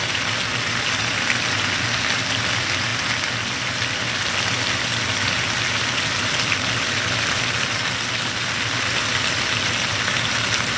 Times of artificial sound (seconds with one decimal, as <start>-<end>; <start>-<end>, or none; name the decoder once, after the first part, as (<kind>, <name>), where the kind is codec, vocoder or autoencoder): none